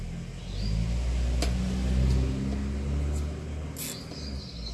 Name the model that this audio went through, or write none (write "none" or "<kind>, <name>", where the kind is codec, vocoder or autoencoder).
none